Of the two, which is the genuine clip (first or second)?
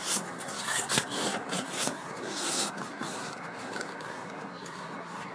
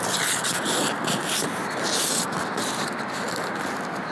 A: second